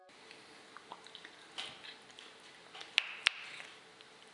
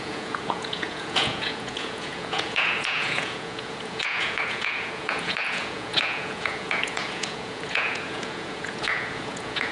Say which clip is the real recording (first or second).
first